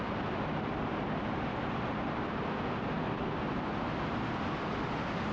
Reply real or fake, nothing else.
real